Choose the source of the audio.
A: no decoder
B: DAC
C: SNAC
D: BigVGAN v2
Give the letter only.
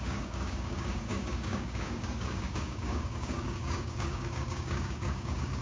B